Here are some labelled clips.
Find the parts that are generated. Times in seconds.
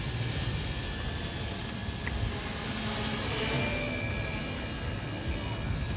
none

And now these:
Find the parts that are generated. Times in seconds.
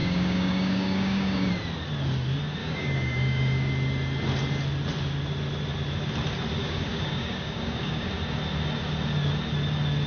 0.0-1.5; 2.6-3.7; 6.6-8.1